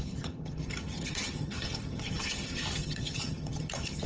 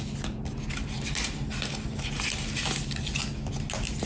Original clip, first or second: second